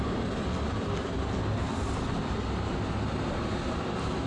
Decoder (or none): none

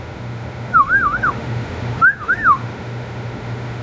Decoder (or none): autoencoder, DAC-VAE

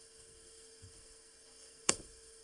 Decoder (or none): codec, SNAC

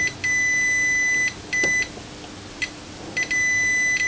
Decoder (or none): none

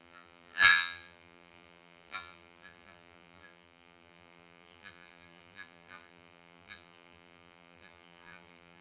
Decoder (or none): vocoder, BigVGAN v2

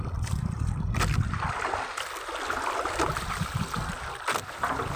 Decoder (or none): none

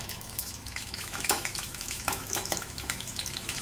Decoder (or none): autoencoder, DAC-VAE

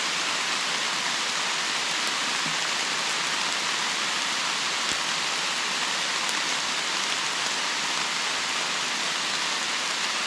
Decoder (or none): none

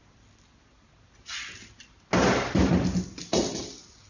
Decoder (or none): none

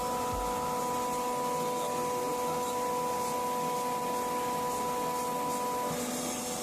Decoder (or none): none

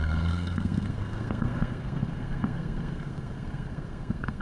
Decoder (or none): codec, SNAC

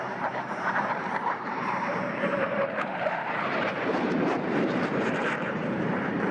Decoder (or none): vocoder, BigVGAN v2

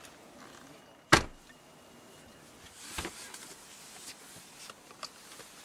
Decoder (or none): none